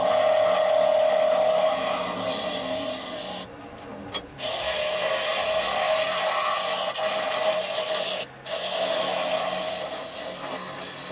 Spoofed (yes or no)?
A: no